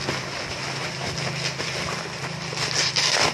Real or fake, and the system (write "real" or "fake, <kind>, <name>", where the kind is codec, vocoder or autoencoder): real